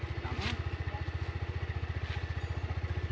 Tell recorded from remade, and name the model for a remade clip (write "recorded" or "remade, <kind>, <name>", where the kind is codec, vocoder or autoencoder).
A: recorded